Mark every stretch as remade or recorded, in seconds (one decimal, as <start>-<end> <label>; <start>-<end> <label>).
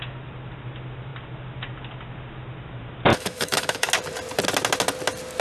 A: 0.0-3.1 recorded; 3.1-3.9 remade; 3.9-5.4 recorded